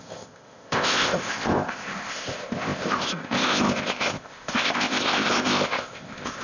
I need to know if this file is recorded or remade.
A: remade